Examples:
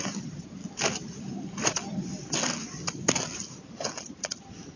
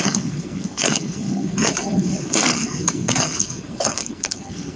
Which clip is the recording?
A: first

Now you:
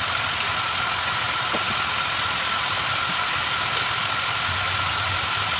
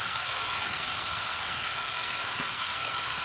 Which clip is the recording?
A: first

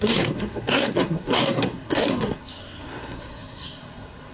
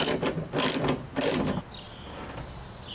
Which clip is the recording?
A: second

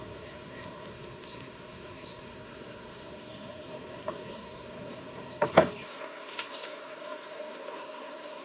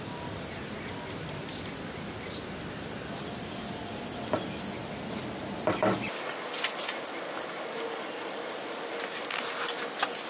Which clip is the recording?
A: second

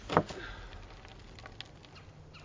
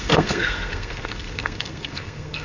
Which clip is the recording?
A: first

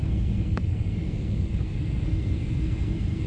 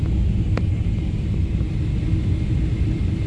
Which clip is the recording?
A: second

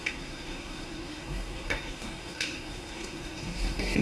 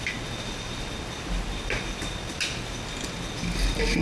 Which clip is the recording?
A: second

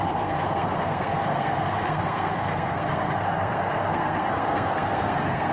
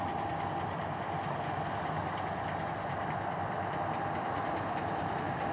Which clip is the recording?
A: second